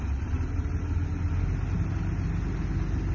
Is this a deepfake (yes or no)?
no